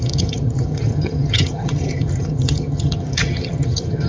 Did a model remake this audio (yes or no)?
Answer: yes